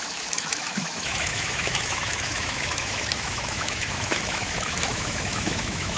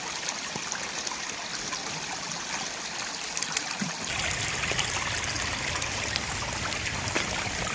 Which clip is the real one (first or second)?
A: second